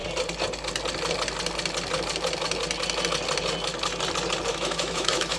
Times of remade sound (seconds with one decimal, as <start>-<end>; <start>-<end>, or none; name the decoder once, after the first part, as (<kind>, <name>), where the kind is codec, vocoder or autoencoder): 4.5-5.4 (autoencoder, DAC-VAE)